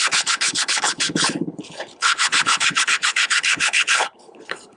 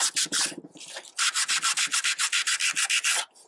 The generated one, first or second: first